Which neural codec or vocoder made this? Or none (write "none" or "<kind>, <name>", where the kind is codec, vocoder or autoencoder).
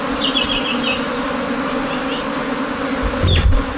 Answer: none